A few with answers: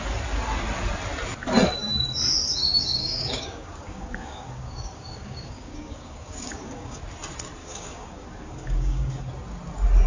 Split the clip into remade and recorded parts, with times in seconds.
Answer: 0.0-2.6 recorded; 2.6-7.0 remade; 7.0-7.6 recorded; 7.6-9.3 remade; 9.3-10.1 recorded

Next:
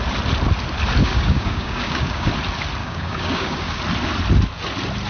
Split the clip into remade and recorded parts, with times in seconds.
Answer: 0.0-1.0 recorded; 1.0-2.3 remade; 2.3-2.8 recorded; 2.8-3.8 remade; 3.8-5.1 recorded

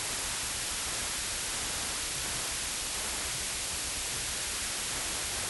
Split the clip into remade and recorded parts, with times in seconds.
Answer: 0.0-5.5 recorded

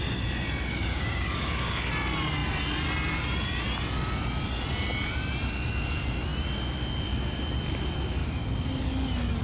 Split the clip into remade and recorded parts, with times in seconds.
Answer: 0.0-0.9 recorded; 0.9-1.9 remade; 1.9-9.4 recorded

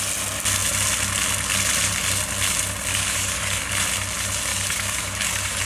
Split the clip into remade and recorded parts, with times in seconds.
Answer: 0.0-2.9 recorded; 2.9-3.7 remade; 3.7-4.5 recorded; 4.5-5.6 remade

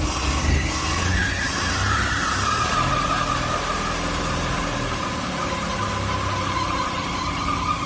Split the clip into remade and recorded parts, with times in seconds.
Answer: 0.0-7.9 recorded